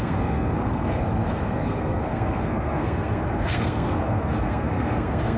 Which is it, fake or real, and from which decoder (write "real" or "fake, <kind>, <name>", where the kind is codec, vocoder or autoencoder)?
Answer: fake, codec, SNAC